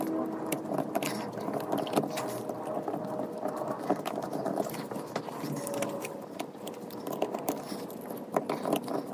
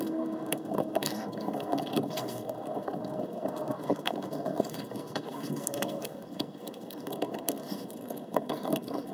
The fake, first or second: second